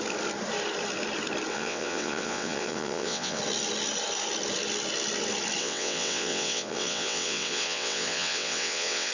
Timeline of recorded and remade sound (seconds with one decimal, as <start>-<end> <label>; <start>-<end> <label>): 0.0-1.5 recorded; 1.5-3.4 remade; 3.4-5.6 recorded; 5.6-9.1 remade